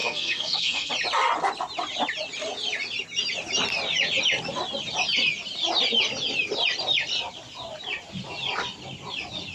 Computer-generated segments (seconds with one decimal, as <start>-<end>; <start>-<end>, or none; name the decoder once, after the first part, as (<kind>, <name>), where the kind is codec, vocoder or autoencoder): 0.0-0.9 (codec, SNAC)